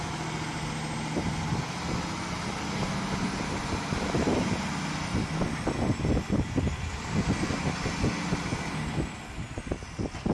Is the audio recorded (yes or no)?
yes